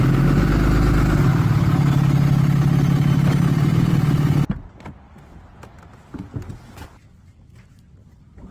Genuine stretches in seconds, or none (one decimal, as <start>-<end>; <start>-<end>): 0.0-1.3; 4.9-8.5